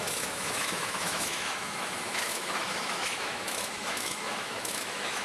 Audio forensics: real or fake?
fake